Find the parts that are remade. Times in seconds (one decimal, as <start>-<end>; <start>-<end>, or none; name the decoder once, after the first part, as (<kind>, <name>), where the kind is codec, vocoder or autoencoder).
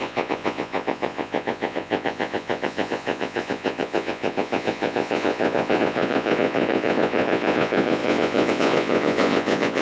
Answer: 0.0-9.8 (vocoder, Vocos)